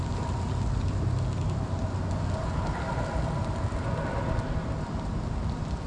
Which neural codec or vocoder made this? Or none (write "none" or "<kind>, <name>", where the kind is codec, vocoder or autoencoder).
none